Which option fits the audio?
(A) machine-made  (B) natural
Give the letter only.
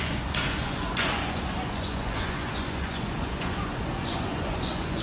A